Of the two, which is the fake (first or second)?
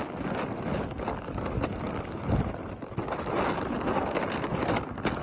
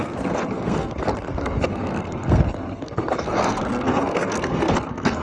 second